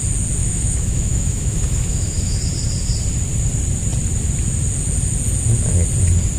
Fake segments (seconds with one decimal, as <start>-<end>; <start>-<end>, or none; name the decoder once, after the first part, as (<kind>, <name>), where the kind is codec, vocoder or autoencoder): 0.4-2.4 (autoencoder, DAC-VAE)